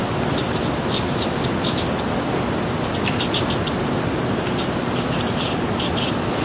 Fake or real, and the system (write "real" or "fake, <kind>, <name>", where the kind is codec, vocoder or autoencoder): real